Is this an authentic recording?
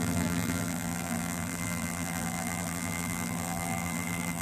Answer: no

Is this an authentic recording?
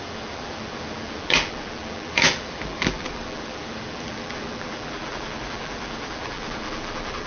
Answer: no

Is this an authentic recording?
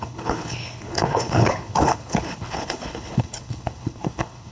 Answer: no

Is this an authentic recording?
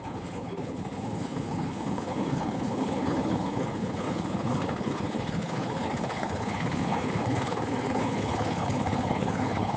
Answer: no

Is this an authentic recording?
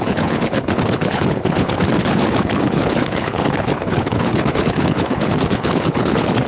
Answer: no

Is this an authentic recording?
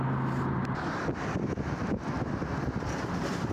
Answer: yes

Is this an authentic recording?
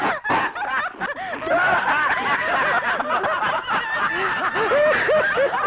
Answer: yes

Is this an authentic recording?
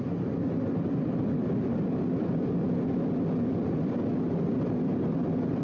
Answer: yes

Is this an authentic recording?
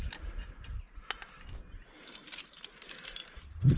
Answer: yes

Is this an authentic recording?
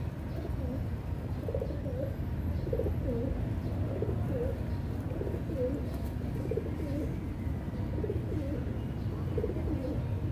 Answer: yes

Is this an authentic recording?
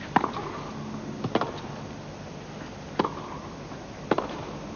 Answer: yes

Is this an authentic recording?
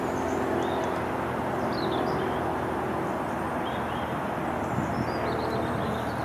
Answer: yes